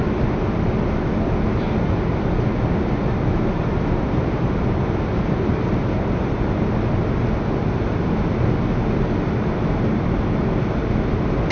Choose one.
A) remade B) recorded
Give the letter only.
B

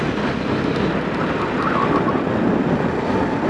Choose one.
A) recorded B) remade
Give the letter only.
A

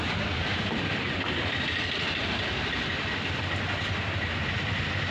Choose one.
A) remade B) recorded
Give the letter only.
B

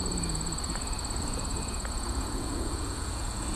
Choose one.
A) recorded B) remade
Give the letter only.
B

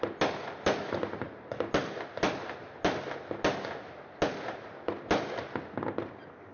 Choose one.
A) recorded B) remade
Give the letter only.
A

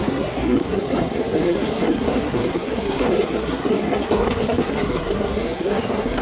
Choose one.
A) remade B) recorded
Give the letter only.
A